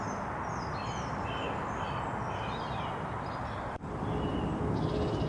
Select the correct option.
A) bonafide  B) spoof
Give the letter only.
A